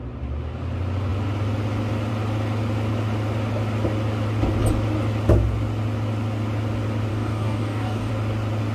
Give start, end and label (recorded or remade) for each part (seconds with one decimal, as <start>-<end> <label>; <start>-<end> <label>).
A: 0.0-7.1 recorded; 7.1-8.1 remade; 8.1-8.7 recorded